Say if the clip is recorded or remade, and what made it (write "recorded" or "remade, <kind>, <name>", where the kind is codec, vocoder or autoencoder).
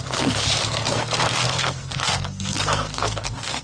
remade, codec, SNAC